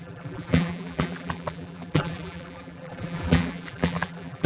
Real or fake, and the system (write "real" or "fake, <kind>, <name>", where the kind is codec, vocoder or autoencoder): fake, vocoder, BigVGAN v2